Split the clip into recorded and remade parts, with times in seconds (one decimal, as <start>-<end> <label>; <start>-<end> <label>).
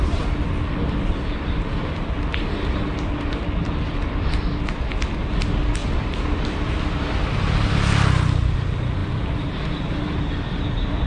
0.0-5.8 recorded; 5.8-6.4 remade; 6.4-9.0 recorded; 9.0-10.3 remade; 10.3-11.1 recorded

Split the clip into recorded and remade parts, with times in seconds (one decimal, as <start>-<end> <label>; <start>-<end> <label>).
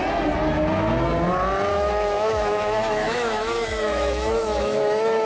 0.0-1.7 recorded; 1.7-5.3 remade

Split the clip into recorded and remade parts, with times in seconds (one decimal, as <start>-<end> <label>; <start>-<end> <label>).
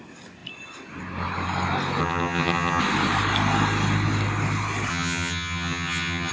0.0-2.0 recorded; 2.0-2.8 remade; 2.8-4.9 recorded; 4.9-6.3 remade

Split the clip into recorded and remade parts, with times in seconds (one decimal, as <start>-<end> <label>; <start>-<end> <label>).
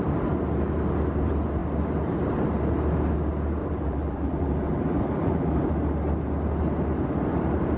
0.0-3.6 recorded; 3.6-5.7 remade; 5.7-7.8 recorded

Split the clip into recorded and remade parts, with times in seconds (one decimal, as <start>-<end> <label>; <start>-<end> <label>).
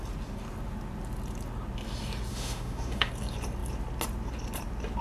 0.0-2.3 recorded; 2.3-3.1 remade; 3.1-5.0 recorded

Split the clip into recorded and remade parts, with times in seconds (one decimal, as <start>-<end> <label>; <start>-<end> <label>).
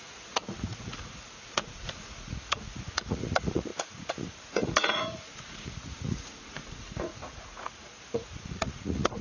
0.0-9.2 remade